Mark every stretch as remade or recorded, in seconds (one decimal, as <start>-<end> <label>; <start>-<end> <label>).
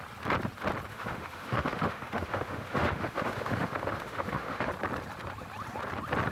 0.0-0.9 recorded; 0.9-4.7 remade; 4.7-6.3 recorded